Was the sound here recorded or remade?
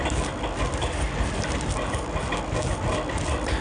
recorded